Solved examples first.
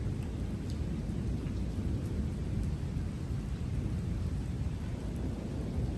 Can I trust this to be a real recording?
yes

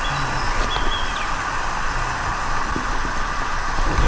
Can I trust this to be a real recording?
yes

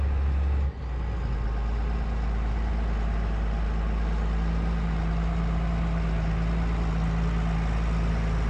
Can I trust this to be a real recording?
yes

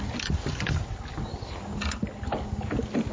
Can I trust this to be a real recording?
yes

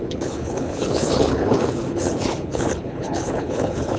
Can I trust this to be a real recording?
no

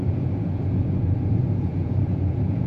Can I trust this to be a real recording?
no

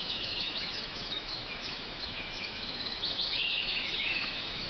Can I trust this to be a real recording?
no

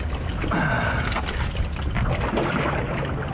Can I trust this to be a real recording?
yes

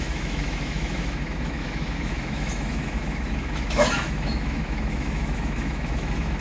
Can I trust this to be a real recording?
no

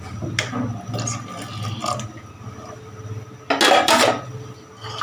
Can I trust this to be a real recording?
yes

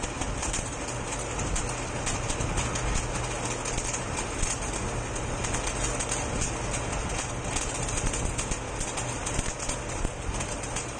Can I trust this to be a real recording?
yes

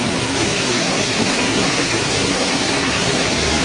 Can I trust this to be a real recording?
no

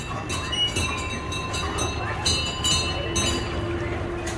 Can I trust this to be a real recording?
yes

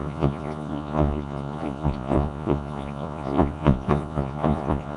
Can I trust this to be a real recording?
no